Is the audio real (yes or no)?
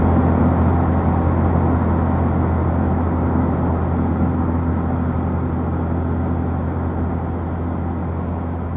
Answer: yes